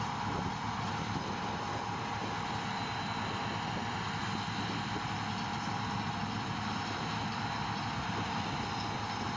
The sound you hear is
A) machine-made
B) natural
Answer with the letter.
B